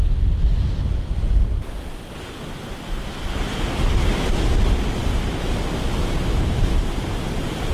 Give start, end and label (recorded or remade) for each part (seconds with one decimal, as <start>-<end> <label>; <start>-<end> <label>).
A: 0.0-5.0 recorded; 5.0-6.7 remade; 6.7-7.7 recorded